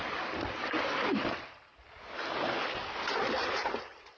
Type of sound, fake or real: real